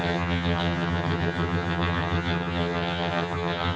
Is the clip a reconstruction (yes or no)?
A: yes